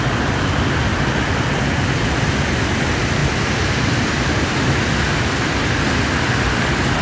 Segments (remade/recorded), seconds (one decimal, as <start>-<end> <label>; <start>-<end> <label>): 0.0-7.0 recorded